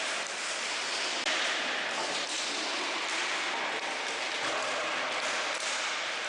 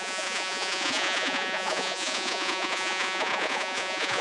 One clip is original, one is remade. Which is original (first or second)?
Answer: first